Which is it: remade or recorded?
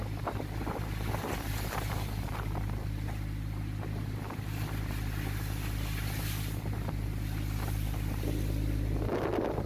recorded